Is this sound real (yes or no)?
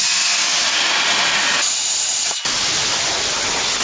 yes